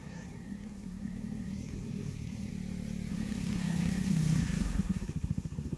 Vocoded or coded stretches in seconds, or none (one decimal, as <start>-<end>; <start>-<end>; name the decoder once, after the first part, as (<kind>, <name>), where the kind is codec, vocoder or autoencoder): 0.0-2.5 (codec, SNAC); 3.1-5.8